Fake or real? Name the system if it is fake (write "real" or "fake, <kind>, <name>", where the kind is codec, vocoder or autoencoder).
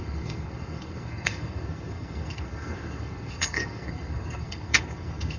fake, codec, SNAC